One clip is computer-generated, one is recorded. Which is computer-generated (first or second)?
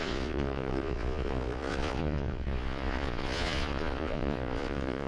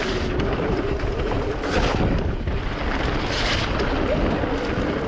first